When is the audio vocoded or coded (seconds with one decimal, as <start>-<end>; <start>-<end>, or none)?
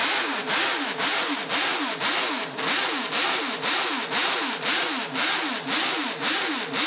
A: none